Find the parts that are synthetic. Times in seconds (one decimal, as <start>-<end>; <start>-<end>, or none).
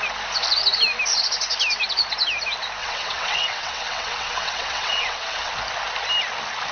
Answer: 2.8-5.5